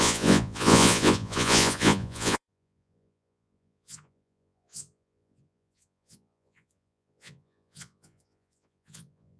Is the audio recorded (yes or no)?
no